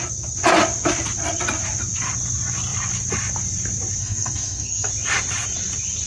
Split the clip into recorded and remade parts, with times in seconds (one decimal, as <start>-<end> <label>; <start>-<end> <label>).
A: 0.0-4.0 recorded; 4.0-4.9 remade; 4.9-6.1 recorded